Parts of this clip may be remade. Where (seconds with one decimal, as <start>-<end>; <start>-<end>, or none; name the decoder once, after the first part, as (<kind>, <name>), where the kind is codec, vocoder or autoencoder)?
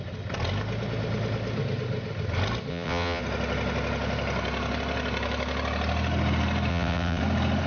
2.7-3.2 (vocoder, WaveNeXt); 6.7-7.2